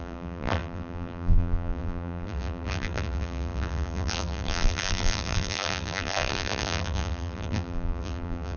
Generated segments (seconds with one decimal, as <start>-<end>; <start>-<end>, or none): 0.0-8.6

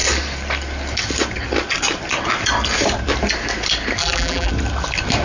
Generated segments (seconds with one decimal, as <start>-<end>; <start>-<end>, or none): 4.0-4.5

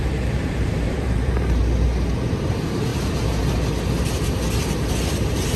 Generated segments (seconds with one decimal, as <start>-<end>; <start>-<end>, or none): 0.0-1.6; 2.3-2.9

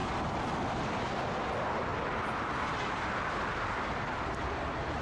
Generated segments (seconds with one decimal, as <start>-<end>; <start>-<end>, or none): 0.0-1.0; 1.9-3.3

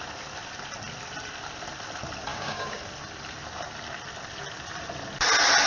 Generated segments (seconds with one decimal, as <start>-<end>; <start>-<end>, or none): 2.3-2.8